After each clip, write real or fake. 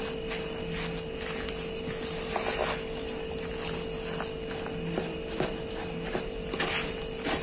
real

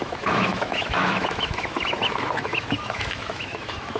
fake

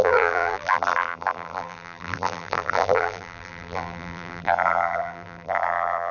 fake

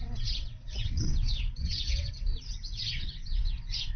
fake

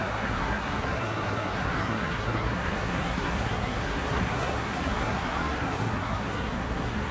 fake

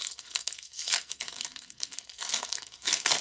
fake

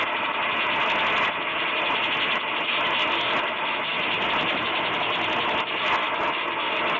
real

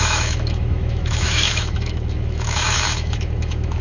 fake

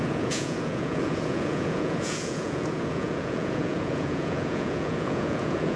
fake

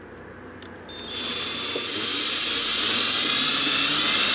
real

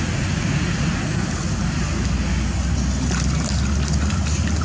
real